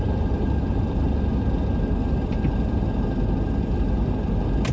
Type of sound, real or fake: real